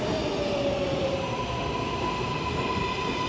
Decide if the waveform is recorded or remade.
recorded